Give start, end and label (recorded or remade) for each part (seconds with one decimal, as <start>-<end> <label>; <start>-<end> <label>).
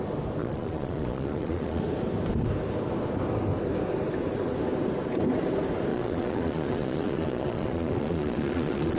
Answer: 0.0-0.4 recorded; 0.4-1.8 remade; 1.8-5.9 recorded; 5.9-9.0 remade